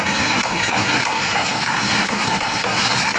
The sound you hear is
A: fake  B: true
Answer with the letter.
A